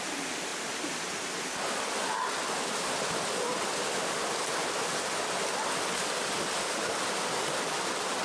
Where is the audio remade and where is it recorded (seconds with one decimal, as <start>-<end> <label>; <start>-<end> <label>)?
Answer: 0.0-8.2 recorded